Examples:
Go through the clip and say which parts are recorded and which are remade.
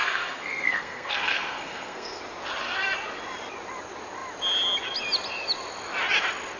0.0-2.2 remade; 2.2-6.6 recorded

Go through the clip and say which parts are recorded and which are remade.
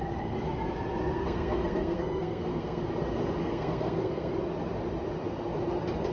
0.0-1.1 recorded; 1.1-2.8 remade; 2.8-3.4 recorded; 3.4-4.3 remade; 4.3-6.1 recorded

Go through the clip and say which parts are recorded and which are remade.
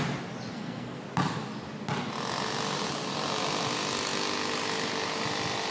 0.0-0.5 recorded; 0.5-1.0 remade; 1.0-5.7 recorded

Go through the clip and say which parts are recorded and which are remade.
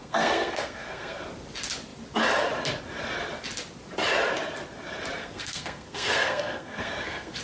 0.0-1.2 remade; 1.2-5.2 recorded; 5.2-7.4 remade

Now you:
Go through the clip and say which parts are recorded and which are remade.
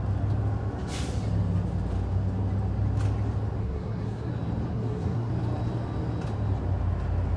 0.0-3.6 recorded; 3.6-4.3 remade; 4.3-4.7 recorded; 4.7-5.3 remade; 5.3-7.4 recorded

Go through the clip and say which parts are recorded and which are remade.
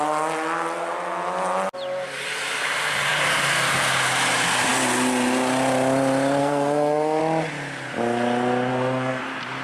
0.0-6.4 recorded; 6.4-7.2 remade; 7.2-8.7 recorded; 8.7-9.2 remade; 9.2-9.6 recorded